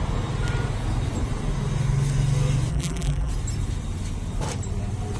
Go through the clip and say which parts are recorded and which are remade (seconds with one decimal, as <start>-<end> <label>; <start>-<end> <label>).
0.0-2.7 recorded; 2.7-3.3 remade; 3.3-5.2 recorded